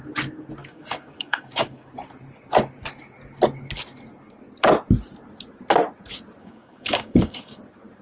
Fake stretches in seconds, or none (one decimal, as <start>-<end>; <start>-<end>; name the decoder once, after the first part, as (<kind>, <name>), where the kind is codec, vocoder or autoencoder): 0.6-1.9 (codec, DAC); 6.4-7.6